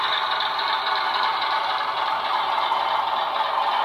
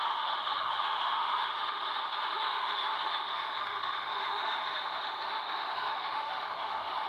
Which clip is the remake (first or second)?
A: second